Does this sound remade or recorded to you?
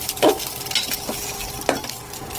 recorded